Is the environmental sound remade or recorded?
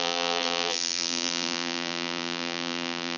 remade